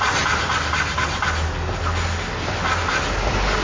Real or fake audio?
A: real